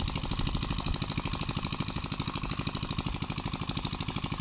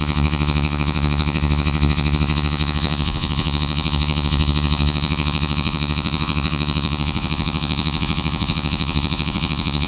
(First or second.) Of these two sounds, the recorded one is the first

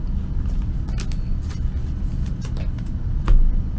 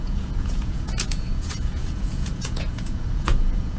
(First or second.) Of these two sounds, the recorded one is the first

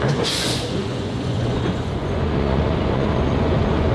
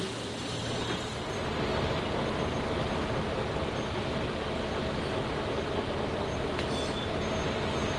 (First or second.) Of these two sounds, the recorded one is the second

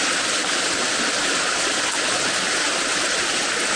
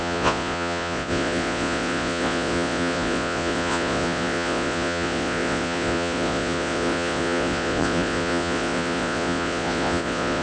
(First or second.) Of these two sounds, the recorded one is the first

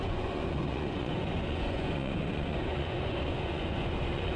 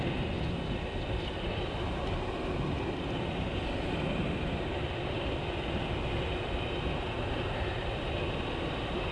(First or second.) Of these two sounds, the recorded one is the second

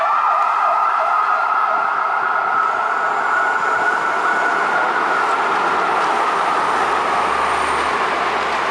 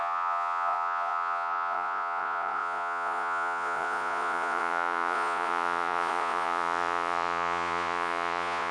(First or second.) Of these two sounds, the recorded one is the first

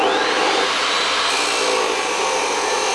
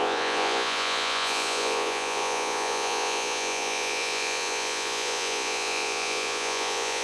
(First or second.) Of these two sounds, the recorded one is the first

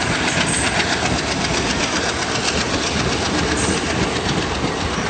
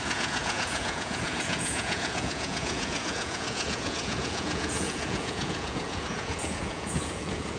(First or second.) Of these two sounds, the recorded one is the first